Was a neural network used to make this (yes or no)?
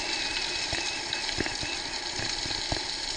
no